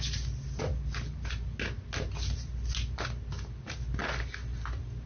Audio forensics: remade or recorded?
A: recorded